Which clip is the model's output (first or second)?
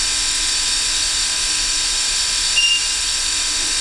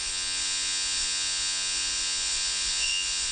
second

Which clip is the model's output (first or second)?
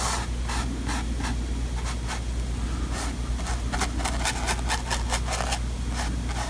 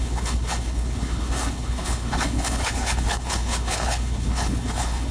second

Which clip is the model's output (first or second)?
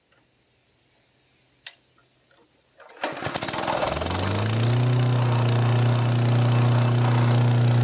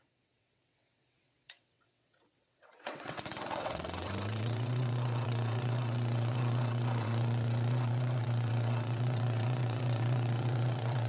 second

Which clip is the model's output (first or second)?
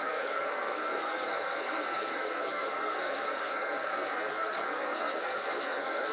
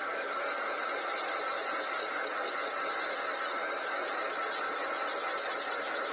first